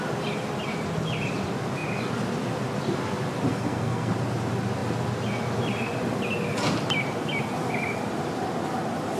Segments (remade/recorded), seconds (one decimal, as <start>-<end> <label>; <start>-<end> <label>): 0.0-3.5 recorded; 3.5-4.1 remade; 4.1-9.2 recorded